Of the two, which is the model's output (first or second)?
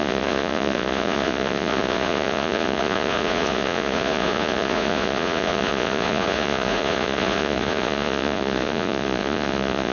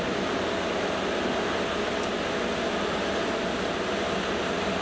first